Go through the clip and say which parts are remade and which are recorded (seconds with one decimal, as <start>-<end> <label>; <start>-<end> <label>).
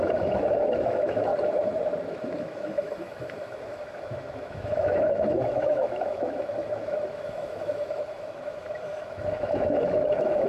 0.0-1.3 remade; 1.3-2.1 recorded; 2.1-10.5 remade